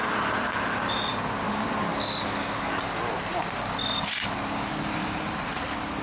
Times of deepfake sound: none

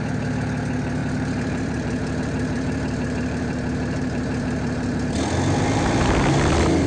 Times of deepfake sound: 1.0-5.1 (vocoder, BigVGAN v2)

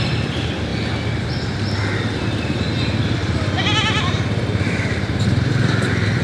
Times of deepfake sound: 0.0-0.7 (vocoder, BigVGAN v2); 1.9-6.2

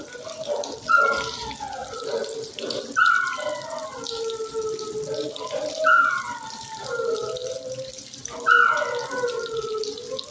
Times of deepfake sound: none